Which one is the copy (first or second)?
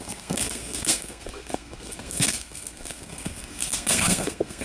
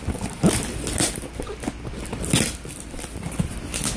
first